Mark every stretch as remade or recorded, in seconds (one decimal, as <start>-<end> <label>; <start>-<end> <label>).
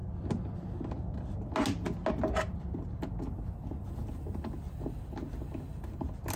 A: 0.0-6.4 recorded